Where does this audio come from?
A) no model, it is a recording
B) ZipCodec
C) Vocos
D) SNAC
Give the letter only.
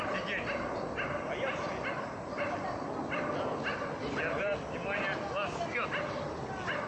A